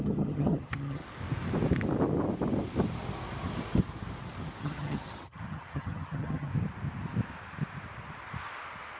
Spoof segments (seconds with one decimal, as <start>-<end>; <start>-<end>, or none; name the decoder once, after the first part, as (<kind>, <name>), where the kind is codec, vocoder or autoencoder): 0.0-1.0 (vocoder, HiFi-GAN); 4.6-6.5